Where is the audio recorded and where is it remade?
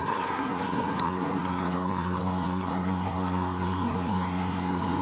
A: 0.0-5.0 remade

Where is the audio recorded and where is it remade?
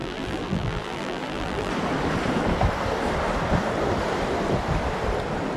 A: 0.0-1.7 remade; 1.7-5.6 recorded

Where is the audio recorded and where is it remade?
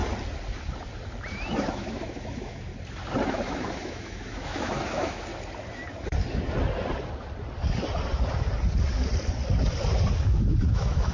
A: 0.0-1.3 recorded; 1.3-2.7 remade; 2.7-3.3 recorded; 3.3-5.3 remade; 5.3-10.1 recorded; 10.1-11.1 remade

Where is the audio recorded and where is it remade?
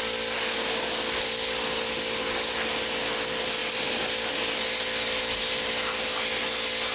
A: 0.0-6.9 recorded